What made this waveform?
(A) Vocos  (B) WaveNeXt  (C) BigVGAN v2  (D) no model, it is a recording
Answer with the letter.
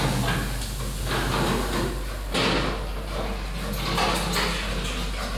D